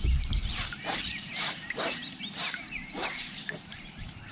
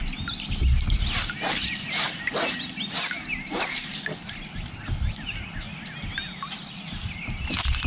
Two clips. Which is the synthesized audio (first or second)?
first